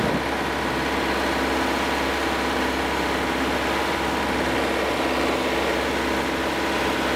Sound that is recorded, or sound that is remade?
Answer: recorded